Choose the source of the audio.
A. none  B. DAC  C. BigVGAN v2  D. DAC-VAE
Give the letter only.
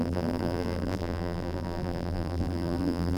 C